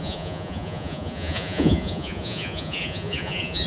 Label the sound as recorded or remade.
remade